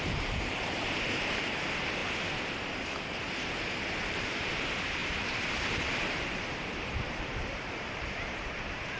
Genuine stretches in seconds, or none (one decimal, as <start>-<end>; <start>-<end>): 2.0-3.5